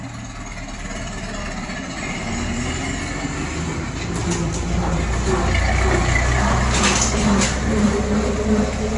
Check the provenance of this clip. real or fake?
real